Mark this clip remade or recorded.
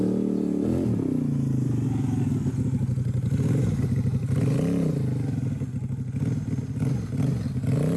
recorded